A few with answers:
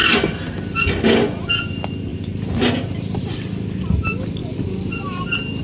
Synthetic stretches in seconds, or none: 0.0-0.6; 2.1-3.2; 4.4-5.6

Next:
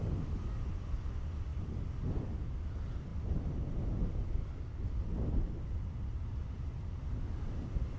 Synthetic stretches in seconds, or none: none

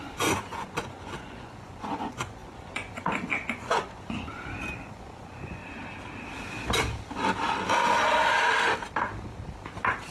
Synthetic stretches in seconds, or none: 0.0-5.6

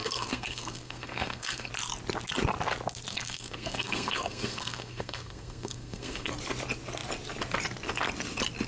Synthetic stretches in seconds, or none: 0.0-1.7; 3.1-6.3